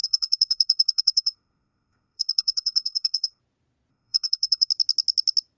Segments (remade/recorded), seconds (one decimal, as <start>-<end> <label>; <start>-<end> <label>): 0.0-3.4 remade; 3.4-3.9 recorded; 3.9-4.7 remade; 4.7-5.6 recorded